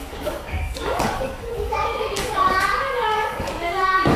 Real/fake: fake